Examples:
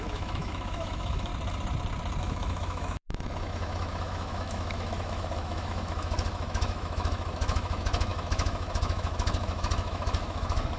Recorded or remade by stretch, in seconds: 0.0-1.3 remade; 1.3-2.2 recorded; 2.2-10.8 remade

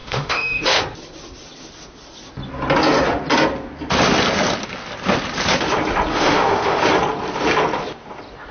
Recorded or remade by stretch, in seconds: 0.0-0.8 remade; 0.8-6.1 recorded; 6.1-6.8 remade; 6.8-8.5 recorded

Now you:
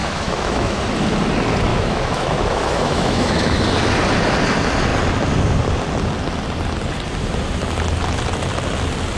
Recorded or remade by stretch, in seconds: 0.0-0.8 remade; 0.8-1.7 recorded; 1.7-3.6 remade; 3.6-9.2 recorded

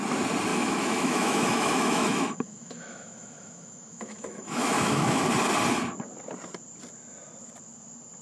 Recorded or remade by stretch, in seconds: 0.0-0.5 recorded; 0.5-5.2 remade; 5.2-8.2 recorded

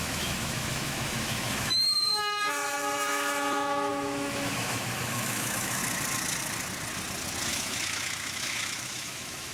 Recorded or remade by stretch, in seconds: 0.0-5.8 remade; 5.8-7.5 recorded; 7.5-9.5 remade